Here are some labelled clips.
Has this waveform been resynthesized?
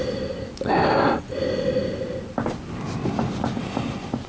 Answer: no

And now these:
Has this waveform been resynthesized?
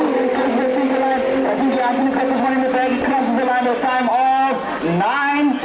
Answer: no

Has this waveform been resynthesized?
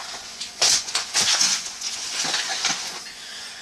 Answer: yes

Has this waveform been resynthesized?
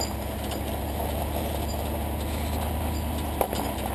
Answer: no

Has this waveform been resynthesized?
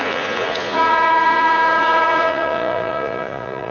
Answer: yes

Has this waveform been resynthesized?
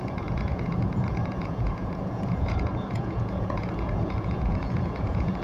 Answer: yes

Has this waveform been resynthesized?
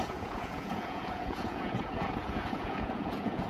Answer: yes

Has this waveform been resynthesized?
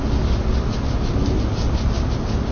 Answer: no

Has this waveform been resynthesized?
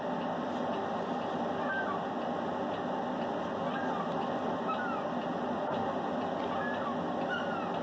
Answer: no